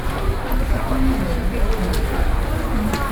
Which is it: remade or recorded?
recorded